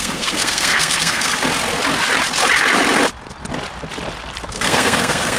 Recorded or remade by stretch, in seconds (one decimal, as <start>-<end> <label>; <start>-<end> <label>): 0.0-1.3 remade; 1.3-4.5 recorded; 4.5-5.4 remade